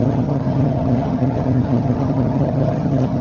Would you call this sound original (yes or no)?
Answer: no